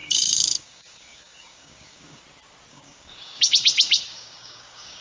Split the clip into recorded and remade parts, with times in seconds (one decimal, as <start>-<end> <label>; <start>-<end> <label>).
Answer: 0.0-2.2 remade; 2.2-2.7 recorded; 2.7-5.0 remade